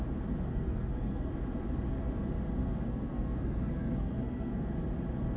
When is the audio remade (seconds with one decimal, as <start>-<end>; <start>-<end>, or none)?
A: 0.5-1.3; 2.6-4.7